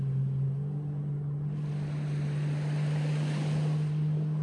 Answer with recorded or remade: recorded